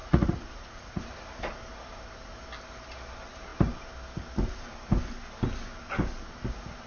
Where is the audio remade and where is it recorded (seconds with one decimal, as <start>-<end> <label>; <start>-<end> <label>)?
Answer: 0.0-1.0 remade; 1.0-6.9 recorded